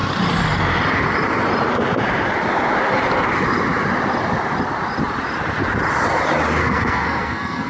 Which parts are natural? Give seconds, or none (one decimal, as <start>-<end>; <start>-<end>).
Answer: 0.0-6.6